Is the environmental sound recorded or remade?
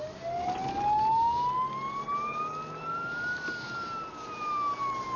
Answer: recorded